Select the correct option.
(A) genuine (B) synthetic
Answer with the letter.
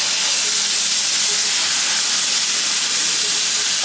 A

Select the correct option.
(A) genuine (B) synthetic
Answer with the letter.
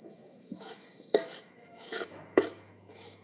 B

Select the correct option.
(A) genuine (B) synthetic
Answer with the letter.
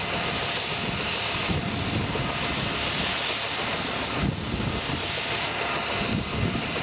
A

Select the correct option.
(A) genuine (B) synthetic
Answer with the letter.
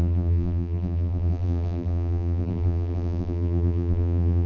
B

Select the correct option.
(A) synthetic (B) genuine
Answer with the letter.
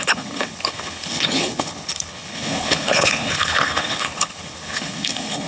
A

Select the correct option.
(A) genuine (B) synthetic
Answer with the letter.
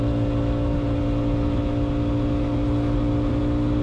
A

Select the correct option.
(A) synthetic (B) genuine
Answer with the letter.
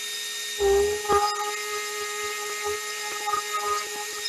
B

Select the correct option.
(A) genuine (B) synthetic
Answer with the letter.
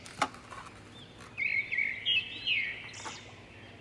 A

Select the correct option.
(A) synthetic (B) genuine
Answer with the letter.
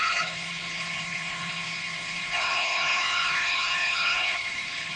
A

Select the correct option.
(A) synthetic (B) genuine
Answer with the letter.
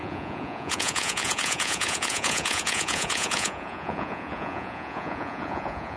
A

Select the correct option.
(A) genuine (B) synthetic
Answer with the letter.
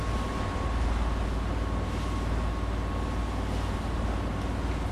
A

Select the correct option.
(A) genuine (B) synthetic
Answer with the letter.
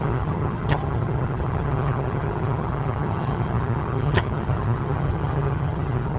B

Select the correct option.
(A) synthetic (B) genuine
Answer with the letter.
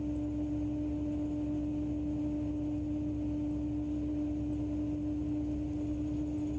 B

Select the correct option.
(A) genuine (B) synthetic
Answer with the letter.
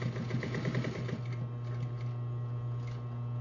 A